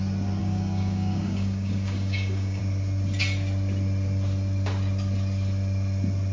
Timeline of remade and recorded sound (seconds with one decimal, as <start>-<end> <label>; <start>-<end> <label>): 0.0-0.4 recorded; 0.4-2.6 remade; 2.6-6.3 recorded